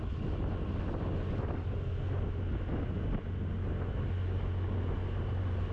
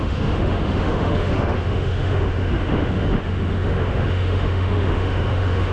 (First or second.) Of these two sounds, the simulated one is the second